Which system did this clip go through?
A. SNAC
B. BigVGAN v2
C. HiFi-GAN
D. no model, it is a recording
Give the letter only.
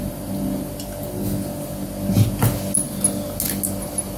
D